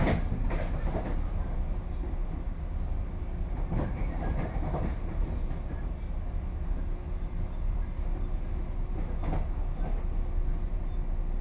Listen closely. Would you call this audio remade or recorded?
recorded